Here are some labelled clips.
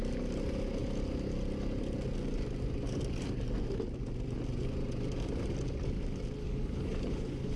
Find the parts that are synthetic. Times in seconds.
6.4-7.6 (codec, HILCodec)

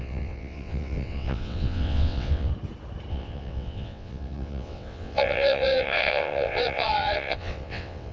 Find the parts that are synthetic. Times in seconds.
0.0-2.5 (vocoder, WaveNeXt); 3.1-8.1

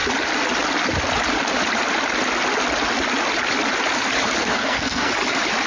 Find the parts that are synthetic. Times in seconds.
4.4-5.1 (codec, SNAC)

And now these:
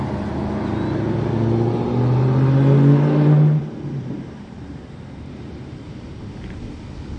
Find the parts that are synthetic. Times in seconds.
3.6-6.6 (vocoder, BigVGAN v2)

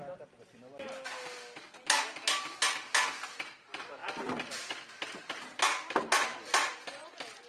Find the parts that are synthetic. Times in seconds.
none